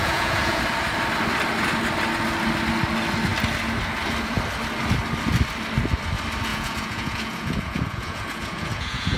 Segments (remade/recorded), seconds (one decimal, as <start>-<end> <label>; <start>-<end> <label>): 0.0-0.6 remade; 0.6-6.5 recorded; 6.5-9.2 remade